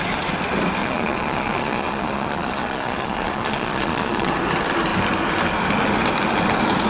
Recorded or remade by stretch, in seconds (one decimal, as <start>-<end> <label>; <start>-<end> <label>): 0.0-0.8 recorded; 0.8-4.3 remade; 4.3-6.9 recorded